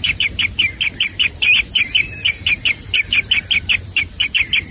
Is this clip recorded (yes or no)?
no